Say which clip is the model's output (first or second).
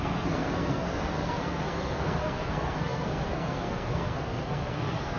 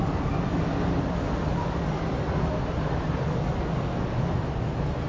first